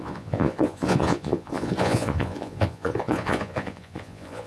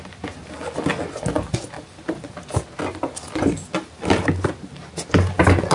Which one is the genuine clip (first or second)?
second